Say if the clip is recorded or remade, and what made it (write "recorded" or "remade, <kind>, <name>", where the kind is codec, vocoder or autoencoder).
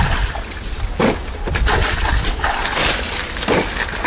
recorded